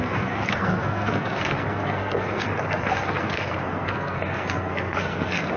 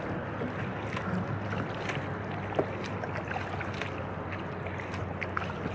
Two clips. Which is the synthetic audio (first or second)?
first